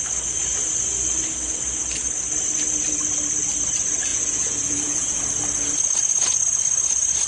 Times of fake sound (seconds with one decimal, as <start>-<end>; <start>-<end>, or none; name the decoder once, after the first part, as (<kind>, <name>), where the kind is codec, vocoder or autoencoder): 4.1-5.2 (vocoder, Vocos)